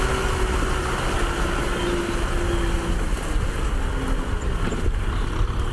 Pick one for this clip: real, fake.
real